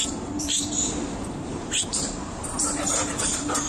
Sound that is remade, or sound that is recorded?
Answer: remade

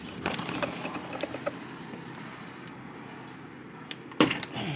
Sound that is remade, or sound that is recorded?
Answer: recorded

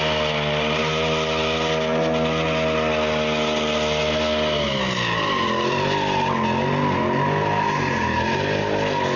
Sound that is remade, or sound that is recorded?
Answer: recorded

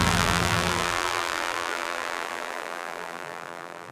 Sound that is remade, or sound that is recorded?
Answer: remade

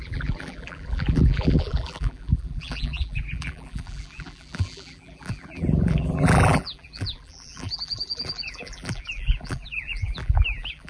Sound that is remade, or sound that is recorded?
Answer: remade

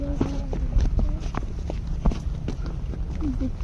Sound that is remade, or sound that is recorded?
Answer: recorded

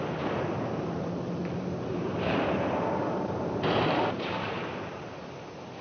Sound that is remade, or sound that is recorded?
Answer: remade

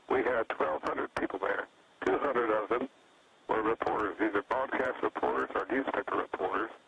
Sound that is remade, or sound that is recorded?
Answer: remade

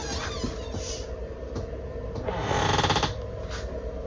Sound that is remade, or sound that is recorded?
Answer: recorded